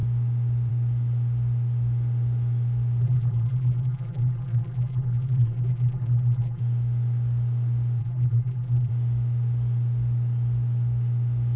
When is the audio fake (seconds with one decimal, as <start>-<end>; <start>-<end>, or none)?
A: 3.0-6.6; 8.0-8.9